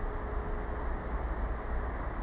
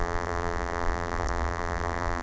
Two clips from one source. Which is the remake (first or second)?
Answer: second